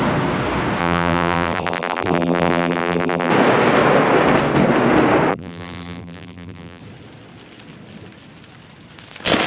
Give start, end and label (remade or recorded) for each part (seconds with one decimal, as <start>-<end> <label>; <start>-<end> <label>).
0.0-0.8 recorded; 0.8-3.3 remade; 3.3-5.3 recorded; 5.3-6.8 remade; 6.8-9.5 recorded